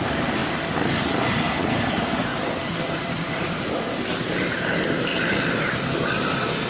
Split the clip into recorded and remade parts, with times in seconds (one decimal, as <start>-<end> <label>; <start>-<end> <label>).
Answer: 0.0-0.4 remade; 0.4-1.9 recorded; 1.9-5.1 remade; 5.1-5.9 recorded; 5.9-6.7 remade